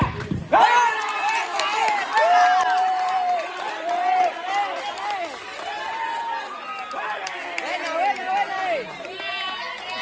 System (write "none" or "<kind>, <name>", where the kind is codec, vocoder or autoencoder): none